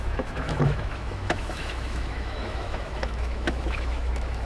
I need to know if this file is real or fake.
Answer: fake